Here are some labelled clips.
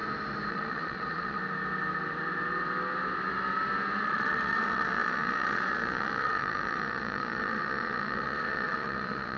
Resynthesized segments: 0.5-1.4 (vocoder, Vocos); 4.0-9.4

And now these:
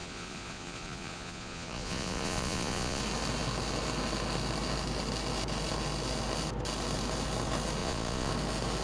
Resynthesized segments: 0.0-3.0 (vocoder, Vocos); 7.8-8.3

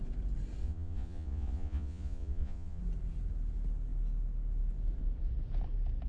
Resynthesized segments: 0.6-2.8 (vocoder, Vocos)

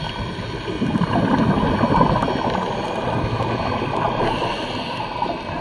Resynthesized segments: none

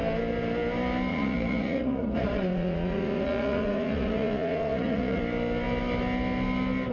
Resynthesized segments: 1.1-5.2 (vocoder, Vocos)

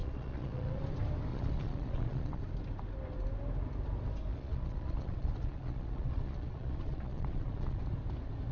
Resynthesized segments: 0.0-0.8 (vocoder, Vocos); 1.3-2.4; 4.3-7.8

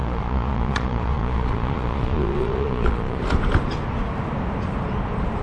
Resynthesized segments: 0.0-3.2 (vocoder, Vocos)

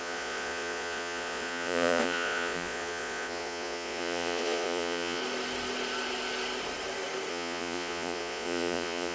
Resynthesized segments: 0.0-5.2 (vocoder, Vocos); 7.3-9.1